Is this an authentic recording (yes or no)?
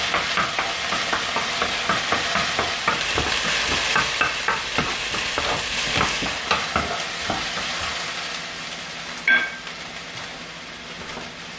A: yes